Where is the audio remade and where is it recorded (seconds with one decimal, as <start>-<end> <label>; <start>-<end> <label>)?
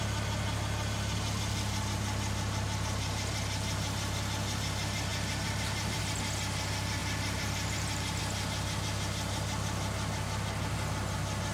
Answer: 0.0-7.0 recorded; 7.0-8.2 remade; 8.2-11.5 recorded